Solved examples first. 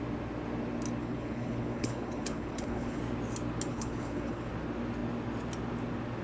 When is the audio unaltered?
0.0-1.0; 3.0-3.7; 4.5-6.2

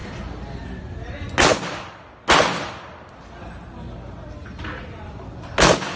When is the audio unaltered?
0.0-6.0

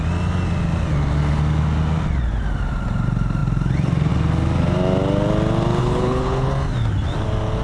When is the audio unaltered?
0.0-5.8; 6.5-7.6